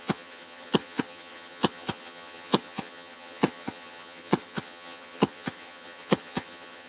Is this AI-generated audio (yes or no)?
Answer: yes